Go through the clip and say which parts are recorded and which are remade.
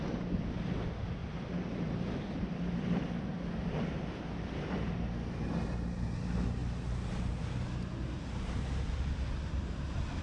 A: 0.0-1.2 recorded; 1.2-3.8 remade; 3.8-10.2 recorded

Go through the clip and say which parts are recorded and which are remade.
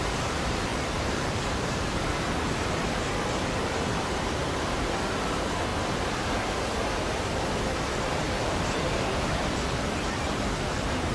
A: 0.0-5.7 remade; 5.7-7.9 recorded; 7.9-11.1 remade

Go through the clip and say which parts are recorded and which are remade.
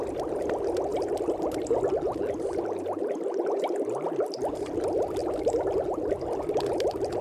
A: 0.0-5.2 recorded; 5.2-5.9 remade; 5.9-7.2 recorded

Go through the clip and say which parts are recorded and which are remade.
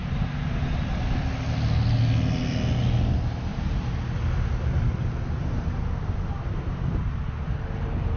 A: 0.0-8.2 recorded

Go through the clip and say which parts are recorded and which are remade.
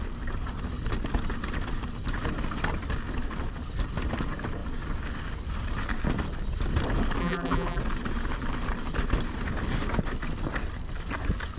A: 0.0-7.2 recorded; 7.2-7.8 remade; 7.8-11.6 recorded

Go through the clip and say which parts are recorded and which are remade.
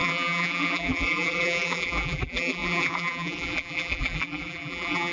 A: 0.0-5.1 remade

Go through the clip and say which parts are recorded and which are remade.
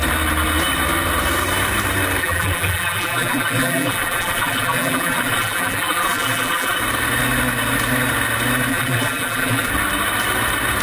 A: 0.0-2.2 recorded; 2.2-6.8 remade; 6.8-8.7 recorded; 8.7-9.7 remade; 9.7-10.8 recorded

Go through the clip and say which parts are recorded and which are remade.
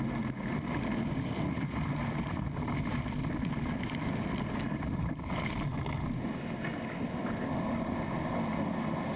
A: 0.0-5.7 remade; 5.7-9.2 recorded